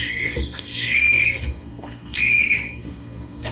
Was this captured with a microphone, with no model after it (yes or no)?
no